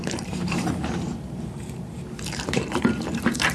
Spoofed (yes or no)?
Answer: yes